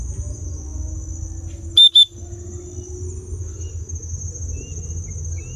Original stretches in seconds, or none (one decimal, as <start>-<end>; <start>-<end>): 0.0-5.6